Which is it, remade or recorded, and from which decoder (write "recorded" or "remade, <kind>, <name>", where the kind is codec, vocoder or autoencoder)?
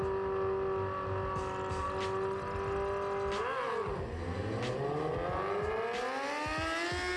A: recorded